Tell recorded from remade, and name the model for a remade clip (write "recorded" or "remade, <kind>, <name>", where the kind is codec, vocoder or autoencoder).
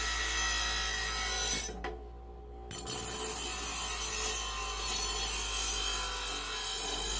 recorded